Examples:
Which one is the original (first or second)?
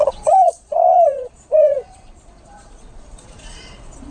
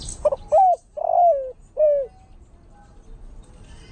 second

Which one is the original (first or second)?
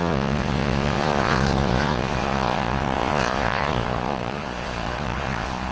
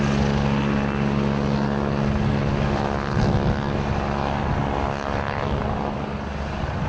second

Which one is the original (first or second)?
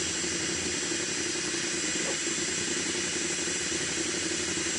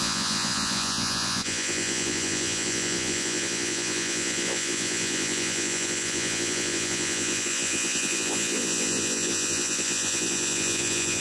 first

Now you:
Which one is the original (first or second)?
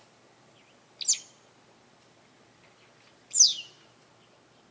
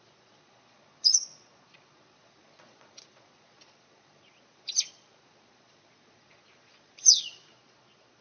first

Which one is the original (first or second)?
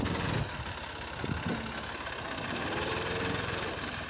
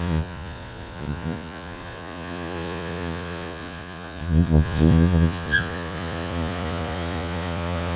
first